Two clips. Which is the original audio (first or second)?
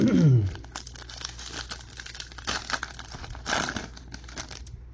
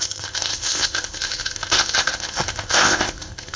first